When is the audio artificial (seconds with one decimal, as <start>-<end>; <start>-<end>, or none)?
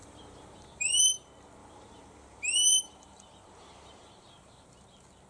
0.0-1.0; 1.6-4.8